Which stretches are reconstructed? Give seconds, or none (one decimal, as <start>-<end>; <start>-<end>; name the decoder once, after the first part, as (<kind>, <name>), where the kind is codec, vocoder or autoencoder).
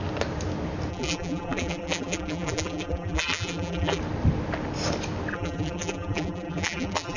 0.9-4.0 (vocoder, BigVGAN v2); 5.3-7.2